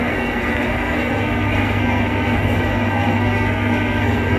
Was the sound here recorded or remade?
remade